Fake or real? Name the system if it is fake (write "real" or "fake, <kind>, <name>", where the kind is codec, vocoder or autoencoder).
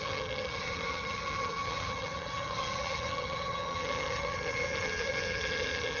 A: fake, vocoder, HiFi-GAN